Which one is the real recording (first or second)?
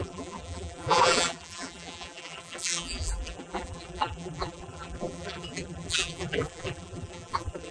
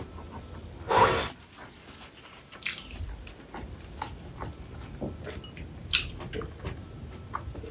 second